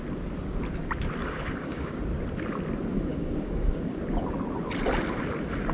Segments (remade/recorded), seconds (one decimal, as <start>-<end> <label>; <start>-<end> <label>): 0.0-1.2 recorded; 1.2-2.0 remade; 2.0-2.9 recorded; 2.9-4.0 remade; 4.0-5.7 recorded